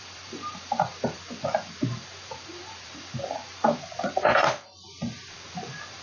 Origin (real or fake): fake